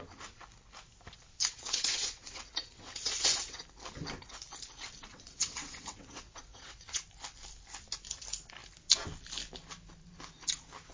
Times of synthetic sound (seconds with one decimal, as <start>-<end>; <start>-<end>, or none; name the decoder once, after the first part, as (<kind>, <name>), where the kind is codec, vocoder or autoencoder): 1.5-3.6 (vocoder, WaveNeXt); 5.1-7.0